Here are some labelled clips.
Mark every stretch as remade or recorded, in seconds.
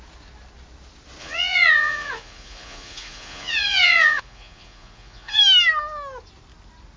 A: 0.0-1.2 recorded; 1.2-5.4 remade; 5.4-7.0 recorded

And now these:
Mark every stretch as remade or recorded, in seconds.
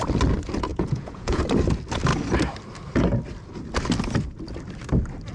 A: 0.0-0.7 recorded; 0.7-1.4 remade; 1.4-5.3 recorded